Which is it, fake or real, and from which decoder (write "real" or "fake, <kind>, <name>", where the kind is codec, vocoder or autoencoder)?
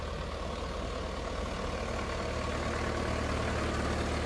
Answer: real